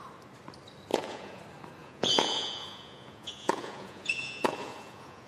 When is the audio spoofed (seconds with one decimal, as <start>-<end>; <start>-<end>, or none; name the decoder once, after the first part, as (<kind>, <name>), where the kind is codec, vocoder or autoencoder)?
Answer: 0.9-1.4 (vocoder, Vocos); 1.8-5.3